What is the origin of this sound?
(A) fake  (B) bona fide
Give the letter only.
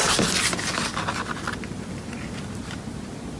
B